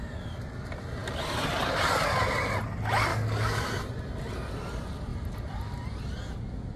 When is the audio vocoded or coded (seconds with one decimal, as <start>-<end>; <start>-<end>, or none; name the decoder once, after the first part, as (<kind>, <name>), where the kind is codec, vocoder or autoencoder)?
3.1-3.7 (codec, DAC)